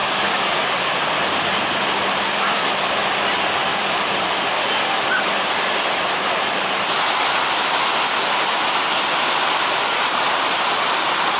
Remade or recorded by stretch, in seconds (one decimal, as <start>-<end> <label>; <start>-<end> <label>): 0.0-11.4 recorded